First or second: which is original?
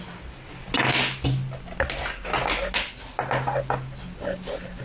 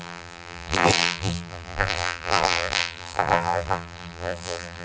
first